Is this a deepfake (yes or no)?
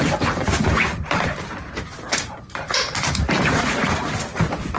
yes